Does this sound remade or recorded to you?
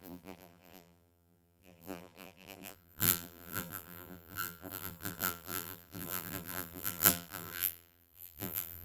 remade